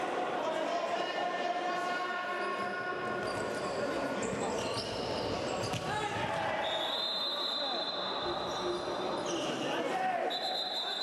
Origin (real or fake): real